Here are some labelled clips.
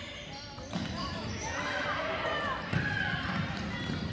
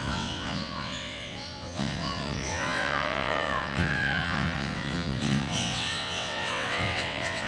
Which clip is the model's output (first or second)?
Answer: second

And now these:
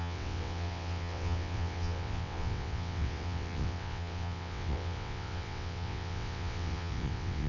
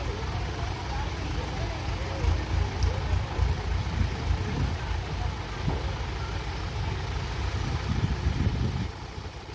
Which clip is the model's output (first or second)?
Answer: first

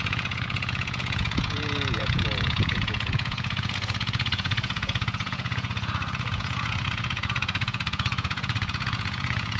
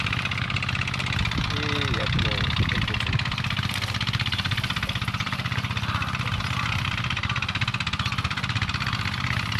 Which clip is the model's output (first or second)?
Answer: first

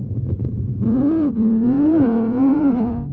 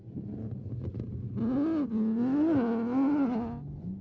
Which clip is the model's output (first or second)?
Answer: first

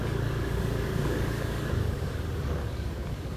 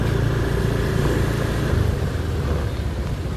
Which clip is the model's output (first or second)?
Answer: first